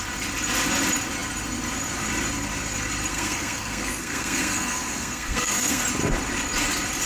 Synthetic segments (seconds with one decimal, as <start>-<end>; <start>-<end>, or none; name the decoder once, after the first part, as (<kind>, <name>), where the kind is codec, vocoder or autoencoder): 3.1-5.8 (codec, SNAC)